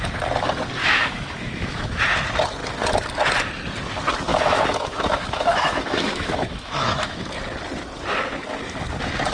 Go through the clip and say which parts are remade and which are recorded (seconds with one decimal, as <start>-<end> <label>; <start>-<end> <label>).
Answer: 0.0-0.8 recorded; 0.8-2.0 remade; 2.0-4.3 recorded; 4.3-7.3 remade; 7.3-9.3 recorded